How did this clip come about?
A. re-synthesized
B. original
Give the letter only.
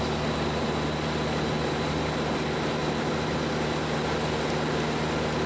B